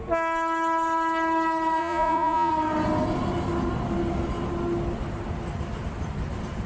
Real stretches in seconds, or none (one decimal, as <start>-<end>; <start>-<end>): 0.0-1.8; 2.5-6.7